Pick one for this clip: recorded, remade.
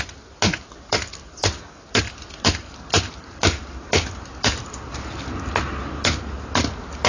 recorded